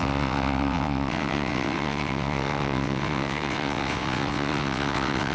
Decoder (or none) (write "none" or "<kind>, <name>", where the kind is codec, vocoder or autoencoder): vocoder, WaveNeXt